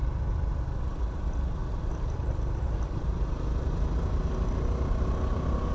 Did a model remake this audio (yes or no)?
no